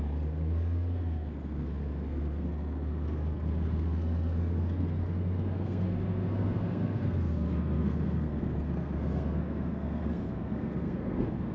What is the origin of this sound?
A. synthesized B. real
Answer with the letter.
A